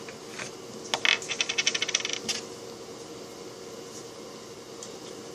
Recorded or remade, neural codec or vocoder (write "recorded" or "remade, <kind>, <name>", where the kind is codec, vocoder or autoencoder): recorded